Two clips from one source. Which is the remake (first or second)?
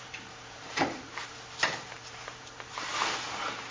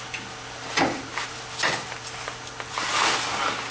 first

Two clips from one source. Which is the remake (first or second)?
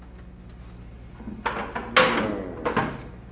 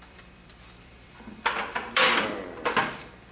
second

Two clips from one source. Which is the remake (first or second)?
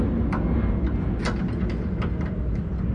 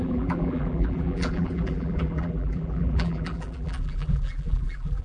second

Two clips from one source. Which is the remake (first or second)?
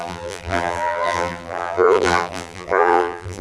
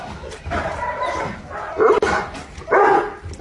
first